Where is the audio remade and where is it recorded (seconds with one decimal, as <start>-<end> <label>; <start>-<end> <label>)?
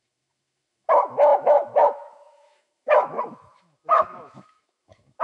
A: 0.0-5.2 remade